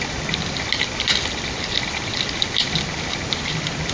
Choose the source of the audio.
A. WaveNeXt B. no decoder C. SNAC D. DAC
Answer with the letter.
B